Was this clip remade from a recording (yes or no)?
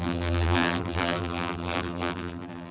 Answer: yes